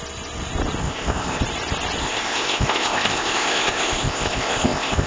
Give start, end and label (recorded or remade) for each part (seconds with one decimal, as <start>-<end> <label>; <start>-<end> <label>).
0.0-0.8 recorded; 0.8-1.4 remade; 1.4-2.0 recorded; 2.0-5.1 remade